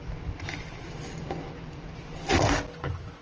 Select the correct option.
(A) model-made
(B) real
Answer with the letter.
B